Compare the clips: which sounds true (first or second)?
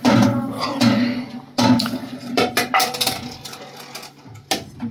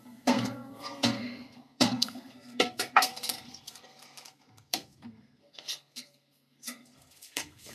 first